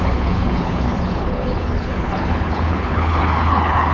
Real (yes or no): no